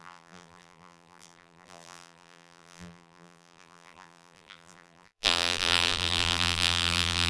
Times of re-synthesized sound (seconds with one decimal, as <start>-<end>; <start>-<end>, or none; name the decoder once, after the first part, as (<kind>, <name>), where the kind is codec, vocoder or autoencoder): 0.0-7.3 (vocoder, BigVGAN v2)